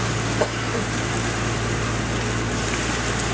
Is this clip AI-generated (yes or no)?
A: no